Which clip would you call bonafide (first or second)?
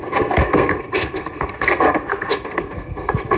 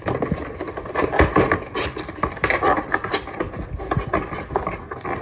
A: second